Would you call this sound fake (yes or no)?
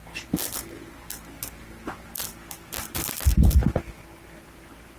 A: no